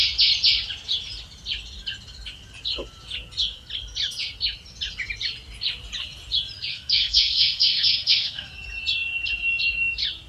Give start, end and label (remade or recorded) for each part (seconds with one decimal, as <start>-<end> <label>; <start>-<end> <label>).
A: 0.0-6.7 recorded; 6.7-8.5 remade; 8.5-10.3 recorded

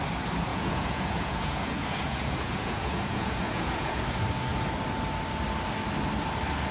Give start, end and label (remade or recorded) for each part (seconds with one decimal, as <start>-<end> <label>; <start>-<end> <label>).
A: 0.0-0.5 recorded; 0.5-4.0 remade; 4.0-6.7 recorded

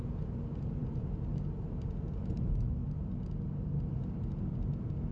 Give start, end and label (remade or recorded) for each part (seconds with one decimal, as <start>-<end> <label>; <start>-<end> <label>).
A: 0.0-5.1 recorded